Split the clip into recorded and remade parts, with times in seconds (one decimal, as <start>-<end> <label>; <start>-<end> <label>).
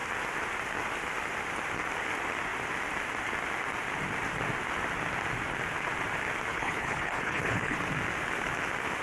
0.0-6.5 recorded; 6.5-7.8 remade; 7.8-9.0 recorded